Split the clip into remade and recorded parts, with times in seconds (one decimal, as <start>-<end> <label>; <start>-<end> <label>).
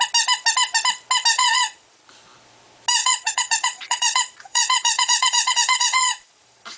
0.0-1.3 recorded; 1.3-2.0 remade; 2.0-3.0 recorded; 3.0-6.8 remade